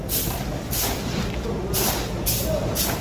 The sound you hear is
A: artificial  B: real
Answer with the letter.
B